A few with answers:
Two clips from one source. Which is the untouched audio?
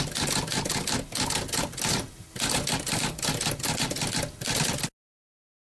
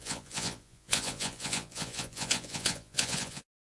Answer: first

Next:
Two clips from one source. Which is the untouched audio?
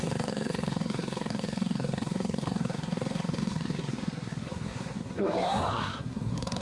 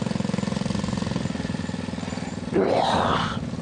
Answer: second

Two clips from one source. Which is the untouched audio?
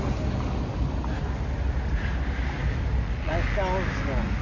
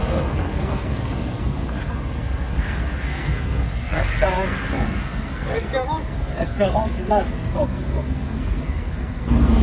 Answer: first